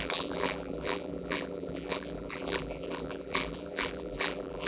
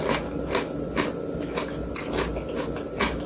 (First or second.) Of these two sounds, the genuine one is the second